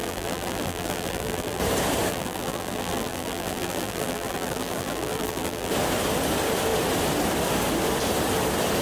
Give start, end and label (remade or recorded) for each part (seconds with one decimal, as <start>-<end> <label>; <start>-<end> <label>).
0.0-1.6 remade; 1.6-2.1 recorded; 2.1-5.7 remade; 5.7-8.8 recorded